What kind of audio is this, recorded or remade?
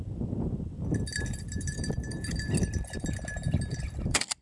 remade